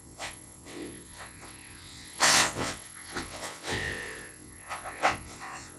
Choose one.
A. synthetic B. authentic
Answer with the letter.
A